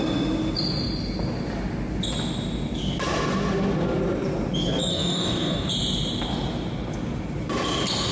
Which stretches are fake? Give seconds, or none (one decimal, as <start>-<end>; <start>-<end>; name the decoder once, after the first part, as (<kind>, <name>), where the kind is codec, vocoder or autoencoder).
4.9-5.7 (codec, DAC)

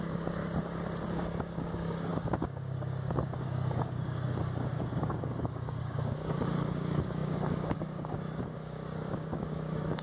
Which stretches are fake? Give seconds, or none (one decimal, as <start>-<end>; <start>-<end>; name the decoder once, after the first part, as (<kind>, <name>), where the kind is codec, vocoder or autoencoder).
0.0-0.4 (codec, DAC); 1.1-10.0

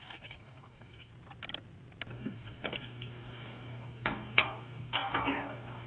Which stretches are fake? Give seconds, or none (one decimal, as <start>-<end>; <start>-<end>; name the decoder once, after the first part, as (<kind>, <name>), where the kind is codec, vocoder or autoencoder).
0.0-1.1 (codec, DAC); 2.1-5.9

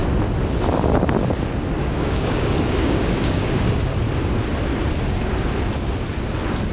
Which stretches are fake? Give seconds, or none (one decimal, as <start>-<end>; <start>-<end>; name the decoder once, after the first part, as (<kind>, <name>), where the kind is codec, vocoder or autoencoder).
1.8-3.9 (codec, DAC)

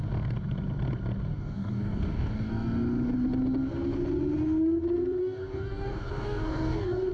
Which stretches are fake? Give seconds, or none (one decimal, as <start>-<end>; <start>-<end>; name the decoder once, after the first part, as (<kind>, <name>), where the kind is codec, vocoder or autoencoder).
1.3-2.5 (codec, DAC); 5.2-7.1

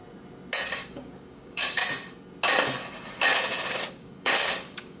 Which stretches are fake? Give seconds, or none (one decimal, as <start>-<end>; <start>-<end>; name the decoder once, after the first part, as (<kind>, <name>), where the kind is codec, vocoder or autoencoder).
0.7-1.8 (codec, DAC); 3.9-5.0

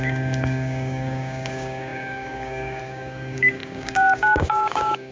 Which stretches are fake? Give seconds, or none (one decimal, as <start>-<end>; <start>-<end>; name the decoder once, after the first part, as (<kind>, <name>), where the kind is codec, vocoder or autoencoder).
0.0-5.1 (codec, DAC)

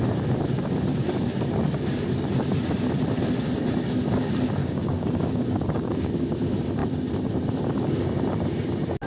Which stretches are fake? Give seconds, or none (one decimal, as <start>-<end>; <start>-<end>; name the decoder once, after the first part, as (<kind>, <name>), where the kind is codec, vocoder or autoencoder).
4.6-6.1 (codec, DAC)